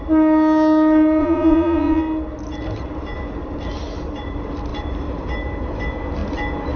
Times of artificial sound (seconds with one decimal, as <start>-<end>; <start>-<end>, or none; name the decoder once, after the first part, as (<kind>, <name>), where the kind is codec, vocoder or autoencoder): 1.2-2.0 (vocoder, Vocos)